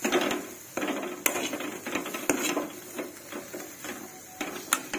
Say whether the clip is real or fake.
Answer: real